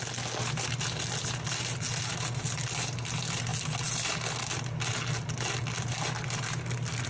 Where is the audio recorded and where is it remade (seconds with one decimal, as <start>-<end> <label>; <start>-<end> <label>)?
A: 0.0-7.1 recorded